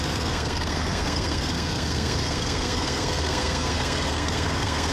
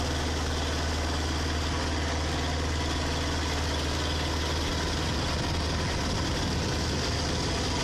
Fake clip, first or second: first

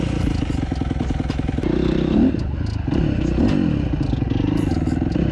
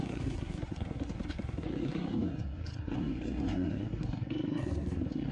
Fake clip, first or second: second